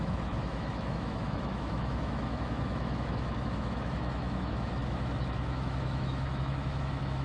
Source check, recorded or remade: remade